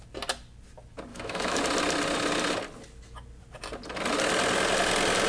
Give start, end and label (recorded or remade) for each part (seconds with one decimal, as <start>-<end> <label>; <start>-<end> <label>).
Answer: 0.0-1.1 recorded; 1.1-1.6 remade; 1.6-5.3 recorded